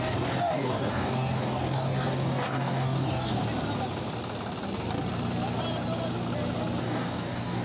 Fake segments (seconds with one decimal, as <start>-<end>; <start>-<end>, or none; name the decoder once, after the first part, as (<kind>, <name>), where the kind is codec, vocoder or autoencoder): 0.0-3.4 (codec, DAC); 6.8-7.6

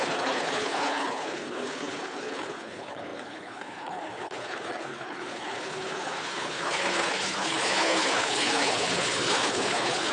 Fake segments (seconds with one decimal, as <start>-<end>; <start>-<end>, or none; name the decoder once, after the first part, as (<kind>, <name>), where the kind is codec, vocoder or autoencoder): 0.0-10.1 (codec, HILCodec)

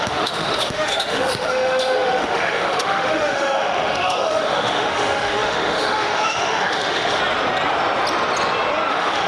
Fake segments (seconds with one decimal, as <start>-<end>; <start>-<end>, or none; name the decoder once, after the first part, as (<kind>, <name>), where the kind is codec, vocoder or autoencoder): 0.0-7.2 (autoencoder, DAC-VAE); 8.9-9.3

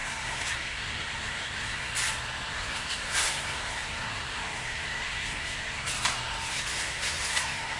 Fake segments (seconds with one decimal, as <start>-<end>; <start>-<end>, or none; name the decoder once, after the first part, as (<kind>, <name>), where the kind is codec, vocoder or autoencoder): 0.0-1.9 (codec, SNAC); 2.5-5.9; 6.5-7.8

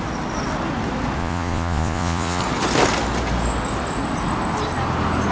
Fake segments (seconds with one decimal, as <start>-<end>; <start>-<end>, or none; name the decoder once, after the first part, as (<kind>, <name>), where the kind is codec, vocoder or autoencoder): 1.2-2.4 (vocoder, Vocos)

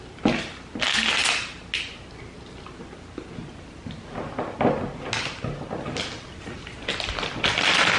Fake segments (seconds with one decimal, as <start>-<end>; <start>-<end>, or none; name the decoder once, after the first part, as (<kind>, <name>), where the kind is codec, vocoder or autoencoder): none

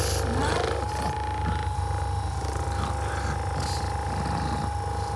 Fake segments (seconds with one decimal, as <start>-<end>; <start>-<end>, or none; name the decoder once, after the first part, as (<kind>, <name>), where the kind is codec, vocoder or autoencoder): none